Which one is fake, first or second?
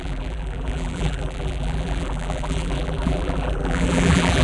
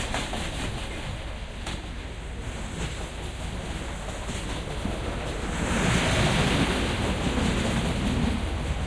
first